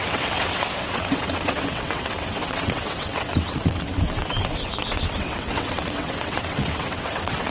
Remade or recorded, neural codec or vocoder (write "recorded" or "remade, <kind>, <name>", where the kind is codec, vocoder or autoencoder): remade, vocoder, WaveNeXt